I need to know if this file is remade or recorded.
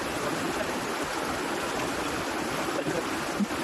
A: recorded